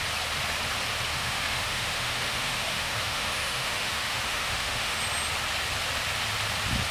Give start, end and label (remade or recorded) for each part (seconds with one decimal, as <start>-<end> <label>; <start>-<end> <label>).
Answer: 0.0-1.1 recorded; 1.1-5.0 remade; 5.0-6.9 recorded